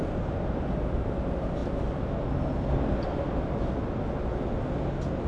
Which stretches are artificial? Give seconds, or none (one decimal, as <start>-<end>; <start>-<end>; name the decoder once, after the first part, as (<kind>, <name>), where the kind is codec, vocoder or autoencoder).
none